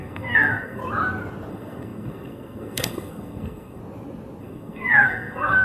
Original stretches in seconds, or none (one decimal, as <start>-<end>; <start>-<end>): 0.8-1.5; 3.8-4.4